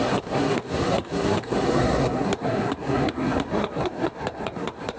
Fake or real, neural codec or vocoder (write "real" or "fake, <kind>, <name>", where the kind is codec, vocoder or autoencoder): fake, codec, SNAC